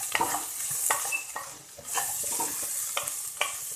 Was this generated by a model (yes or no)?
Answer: no